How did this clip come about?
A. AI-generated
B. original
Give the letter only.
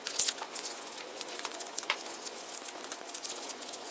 A